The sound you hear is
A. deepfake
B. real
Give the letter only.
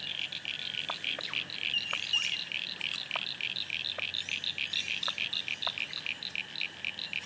B